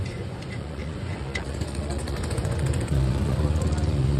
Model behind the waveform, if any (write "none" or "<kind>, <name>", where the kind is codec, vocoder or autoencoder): vocoder, Vocos